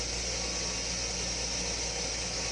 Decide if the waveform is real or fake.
real